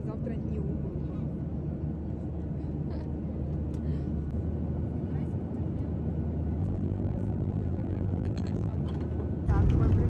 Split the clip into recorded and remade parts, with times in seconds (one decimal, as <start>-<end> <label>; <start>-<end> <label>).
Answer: 0.0-6.6 recorded; 6.6-8.8 remade; 8.8-10.1 recorded